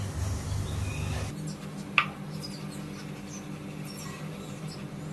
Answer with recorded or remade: recorded